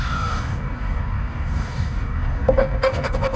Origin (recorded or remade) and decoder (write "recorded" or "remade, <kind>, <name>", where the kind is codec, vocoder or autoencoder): remade, codec, DAC